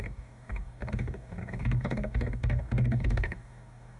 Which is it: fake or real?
fake